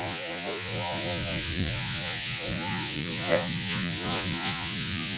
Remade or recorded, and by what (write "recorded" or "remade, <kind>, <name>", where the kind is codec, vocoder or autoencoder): remade, vocoder, Vocos